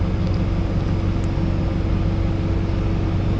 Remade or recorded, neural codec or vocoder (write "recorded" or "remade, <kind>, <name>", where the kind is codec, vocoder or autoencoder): recorded